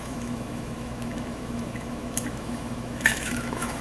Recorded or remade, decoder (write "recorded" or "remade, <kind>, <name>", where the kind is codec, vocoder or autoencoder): remade, autoencoder, DAC-VAE